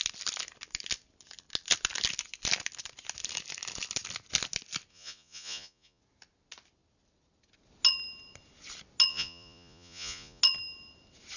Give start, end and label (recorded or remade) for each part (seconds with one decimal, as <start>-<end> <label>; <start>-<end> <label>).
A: 0.0-4.9 recorded; 4.9-6.0 remade; 6.0-9.1 recorded; 9.1-10.4 remade; 10.4-11.4 recorded